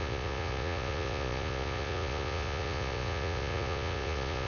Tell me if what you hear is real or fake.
fake